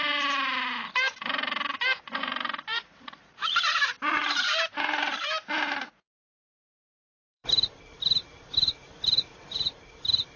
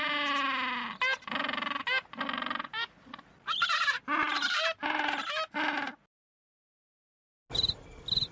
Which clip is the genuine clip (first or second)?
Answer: second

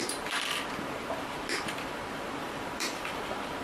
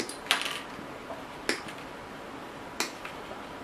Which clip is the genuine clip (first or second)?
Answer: second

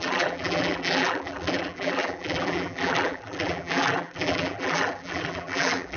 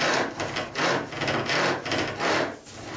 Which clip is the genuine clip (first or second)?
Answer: second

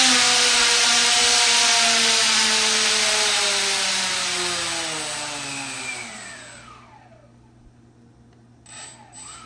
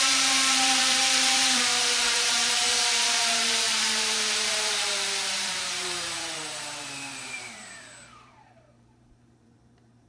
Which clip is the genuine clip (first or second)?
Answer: first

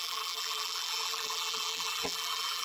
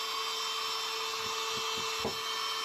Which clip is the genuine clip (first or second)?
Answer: second